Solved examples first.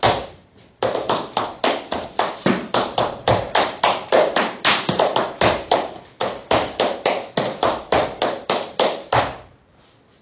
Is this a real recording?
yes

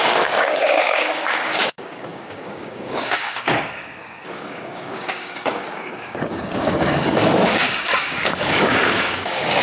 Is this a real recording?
no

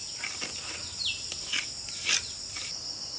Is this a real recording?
yes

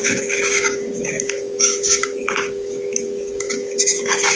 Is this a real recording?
no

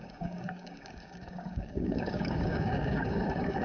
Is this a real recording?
no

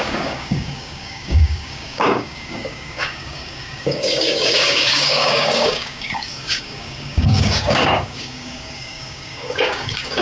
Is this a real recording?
no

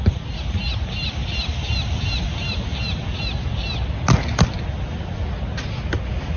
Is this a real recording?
yes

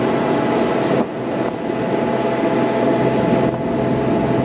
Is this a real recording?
yes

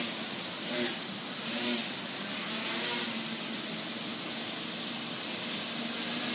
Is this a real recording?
yes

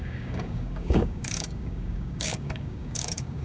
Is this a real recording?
no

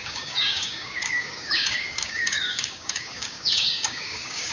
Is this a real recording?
no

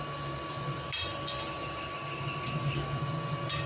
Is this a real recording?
yes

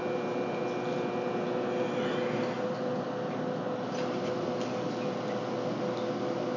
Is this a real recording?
yes